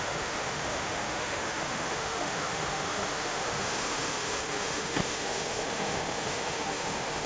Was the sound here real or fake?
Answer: fake